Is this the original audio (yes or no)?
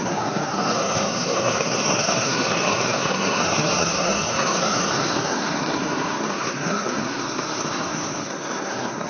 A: no